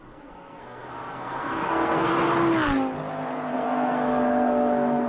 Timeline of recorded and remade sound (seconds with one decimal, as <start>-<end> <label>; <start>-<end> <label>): 0.0-2.1 remade; 2.1-3.5 recorded; 3.5-5.1 remade